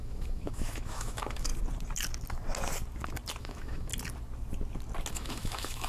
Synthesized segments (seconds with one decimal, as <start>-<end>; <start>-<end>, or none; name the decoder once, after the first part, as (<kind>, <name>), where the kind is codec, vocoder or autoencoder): 0.0-1.5 (autoencoder, DAC-VAE); 3.4-3.9; 5.1-5.9